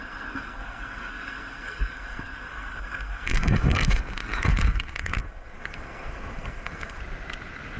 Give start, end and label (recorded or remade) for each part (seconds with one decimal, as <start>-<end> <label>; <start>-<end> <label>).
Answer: 0.0-7.0 remade; 7.0-7.8 recorded